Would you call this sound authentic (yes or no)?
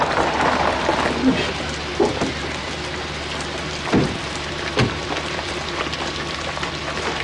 yes